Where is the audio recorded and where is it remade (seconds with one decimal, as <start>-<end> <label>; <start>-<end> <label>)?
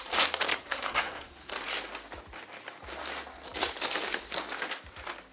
0.0-0.5 recorded; 0.5-1.5 remade; 1.5-5.3 recorded